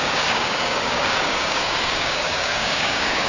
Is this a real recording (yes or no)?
no